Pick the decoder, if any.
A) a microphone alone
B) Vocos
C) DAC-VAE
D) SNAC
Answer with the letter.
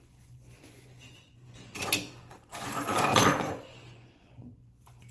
B